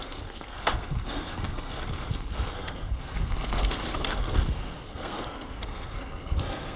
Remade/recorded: remade